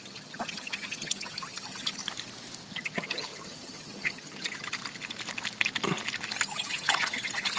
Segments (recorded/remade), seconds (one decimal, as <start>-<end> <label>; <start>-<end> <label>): 0.0-2.0 remade; 2.0-2.7 recorded; 2.7-4.8 remade; 4.8-6.4 recorded; 6.4-7.6 remade